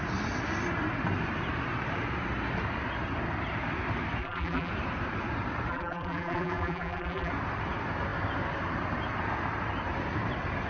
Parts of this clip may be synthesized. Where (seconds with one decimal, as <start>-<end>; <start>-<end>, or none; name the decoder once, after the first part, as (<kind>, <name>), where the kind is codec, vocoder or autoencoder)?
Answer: 4.2-4.7 (vocoder, BigVGAN v2); 5.7-7.3